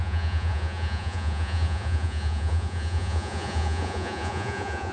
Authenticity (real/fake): fake